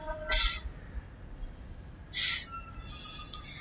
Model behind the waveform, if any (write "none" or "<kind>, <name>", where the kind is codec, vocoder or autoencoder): none